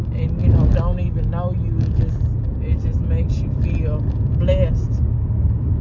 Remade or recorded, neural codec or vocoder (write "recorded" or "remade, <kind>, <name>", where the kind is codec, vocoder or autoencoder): recorded